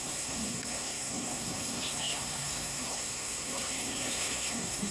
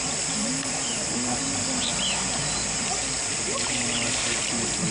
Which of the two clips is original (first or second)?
second